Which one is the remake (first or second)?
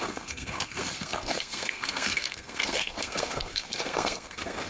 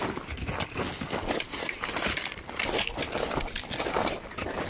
first